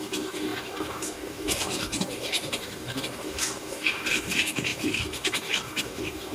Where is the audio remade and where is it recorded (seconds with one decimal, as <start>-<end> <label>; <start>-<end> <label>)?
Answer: 0.0-6.3 remade